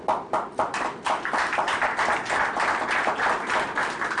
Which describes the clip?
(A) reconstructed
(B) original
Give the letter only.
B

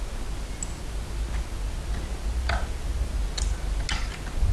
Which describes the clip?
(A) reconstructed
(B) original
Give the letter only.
B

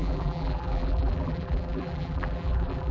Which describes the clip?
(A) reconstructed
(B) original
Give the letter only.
A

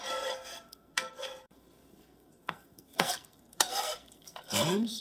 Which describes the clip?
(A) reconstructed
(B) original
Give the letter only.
A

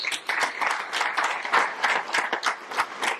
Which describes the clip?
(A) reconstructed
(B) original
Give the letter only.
B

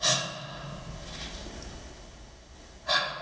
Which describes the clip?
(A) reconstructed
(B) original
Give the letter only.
B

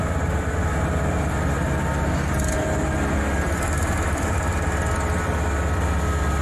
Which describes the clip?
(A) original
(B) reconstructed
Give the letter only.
A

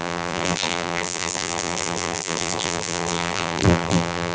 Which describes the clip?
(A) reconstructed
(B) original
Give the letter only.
A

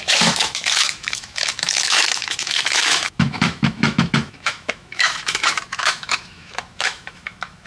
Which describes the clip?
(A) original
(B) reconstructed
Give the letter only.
B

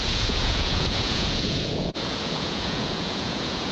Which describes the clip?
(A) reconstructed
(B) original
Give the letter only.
A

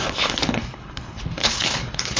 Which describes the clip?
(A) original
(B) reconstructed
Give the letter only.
B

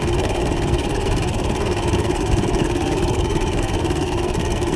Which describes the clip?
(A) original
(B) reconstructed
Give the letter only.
B